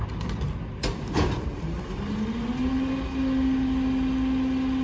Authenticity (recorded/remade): recorded